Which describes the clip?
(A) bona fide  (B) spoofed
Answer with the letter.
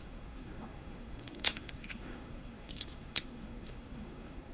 B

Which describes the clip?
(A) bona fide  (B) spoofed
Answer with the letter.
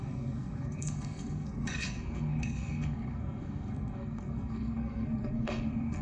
B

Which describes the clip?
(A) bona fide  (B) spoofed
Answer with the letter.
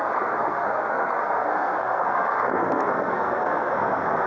B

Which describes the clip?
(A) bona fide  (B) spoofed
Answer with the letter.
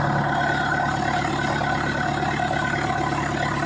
A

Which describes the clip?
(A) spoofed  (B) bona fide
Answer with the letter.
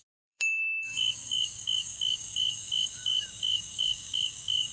A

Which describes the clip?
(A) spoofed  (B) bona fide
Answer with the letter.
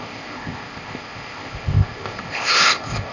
A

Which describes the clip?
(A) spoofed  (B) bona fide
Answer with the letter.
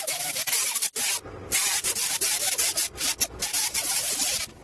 B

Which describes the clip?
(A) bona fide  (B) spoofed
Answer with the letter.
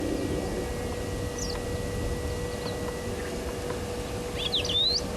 A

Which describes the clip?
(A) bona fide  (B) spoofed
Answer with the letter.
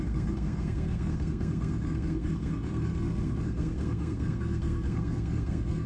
B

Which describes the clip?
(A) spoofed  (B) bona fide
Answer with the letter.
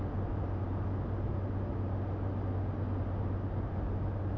B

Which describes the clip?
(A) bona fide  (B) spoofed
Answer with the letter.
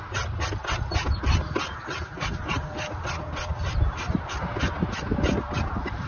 A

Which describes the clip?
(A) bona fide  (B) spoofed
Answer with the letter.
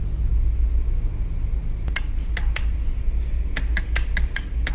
A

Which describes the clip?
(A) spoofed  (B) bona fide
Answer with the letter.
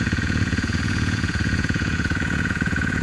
A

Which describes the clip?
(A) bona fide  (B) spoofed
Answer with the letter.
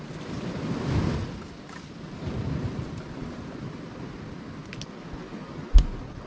A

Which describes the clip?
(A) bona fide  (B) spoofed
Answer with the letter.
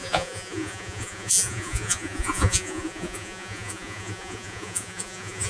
B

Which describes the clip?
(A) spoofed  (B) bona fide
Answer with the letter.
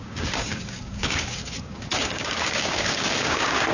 A